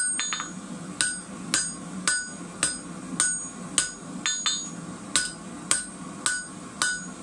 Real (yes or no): yes